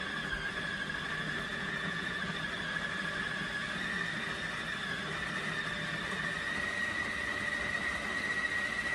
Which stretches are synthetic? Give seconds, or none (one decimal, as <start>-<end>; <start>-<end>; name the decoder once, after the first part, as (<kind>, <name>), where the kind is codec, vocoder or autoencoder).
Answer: 1.5-2.3 (vocoder, Vocos)

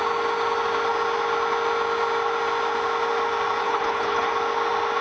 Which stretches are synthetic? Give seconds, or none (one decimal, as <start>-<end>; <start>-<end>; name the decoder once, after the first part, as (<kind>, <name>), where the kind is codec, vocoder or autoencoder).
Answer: 3.6-4.3 (codec, HILCodec)